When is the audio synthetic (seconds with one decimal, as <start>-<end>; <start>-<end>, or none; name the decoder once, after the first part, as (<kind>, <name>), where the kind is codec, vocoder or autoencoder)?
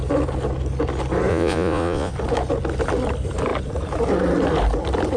1.3-2.1 (vocoder, Vocos)